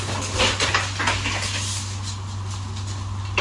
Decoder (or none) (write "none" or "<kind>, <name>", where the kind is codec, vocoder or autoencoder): none